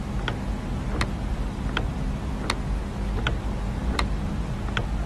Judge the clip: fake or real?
real